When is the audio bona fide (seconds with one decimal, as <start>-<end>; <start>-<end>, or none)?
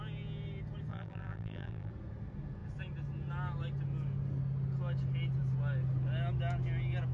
0.0-0.9; 1.9-7.1